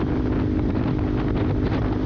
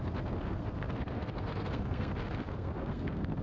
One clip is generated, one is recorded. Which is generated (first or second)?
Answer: second